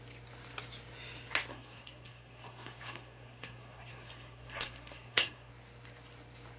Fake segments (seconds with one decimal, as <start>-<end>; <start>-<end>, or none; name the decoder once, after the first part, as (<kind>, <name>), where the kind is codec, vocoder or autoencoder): 1.5-5.5 (codec, SNAC)